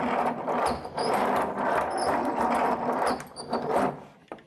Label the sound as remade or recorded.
recorded